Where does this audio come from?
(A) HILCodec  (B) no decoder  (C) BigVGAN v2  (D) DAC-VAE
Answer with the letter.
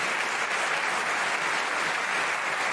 B